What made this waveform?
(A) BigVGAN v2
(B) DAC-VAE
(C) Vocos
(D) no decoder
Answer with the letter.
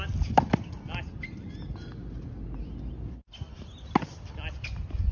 D